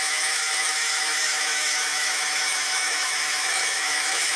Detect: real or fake fake